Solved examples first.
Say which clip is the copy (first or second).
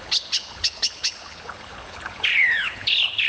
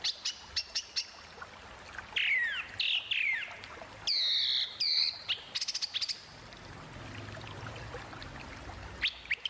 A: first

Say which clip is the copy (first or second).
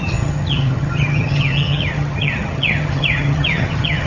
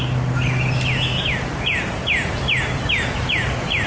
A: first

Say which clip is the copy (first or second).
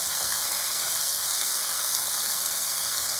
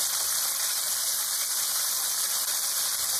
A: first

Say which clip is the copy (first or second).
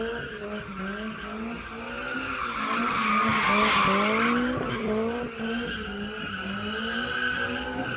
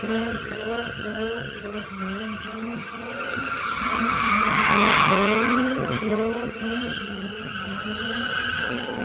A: second